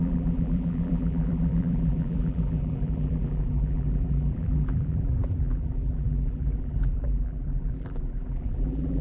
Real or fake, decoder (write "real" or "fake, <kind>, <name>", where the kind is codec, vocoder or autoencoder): fake, vocoder, BigVGAN v2